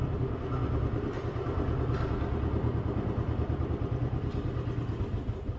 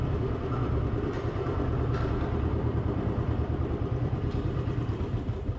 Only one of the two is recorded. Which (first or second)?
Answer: first